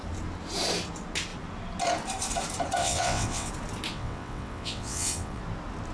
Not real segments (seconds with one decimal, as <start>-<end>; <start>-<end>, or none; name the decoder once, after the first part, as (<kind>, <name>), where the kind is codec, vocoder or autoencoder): 2.8-3.5 (vocoder, WaveNeXt); 3.9-5.4